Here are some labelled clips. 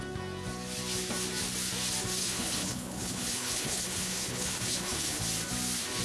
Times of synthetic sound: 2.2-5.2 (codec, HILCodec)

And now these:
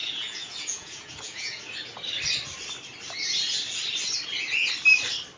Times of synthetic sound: 0.0-1.6 (vocoder, Vocos)

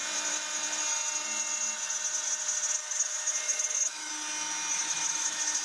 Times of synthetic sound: 2.8-4.1 (autoencoder, DAC-VAE); 4.7-5.6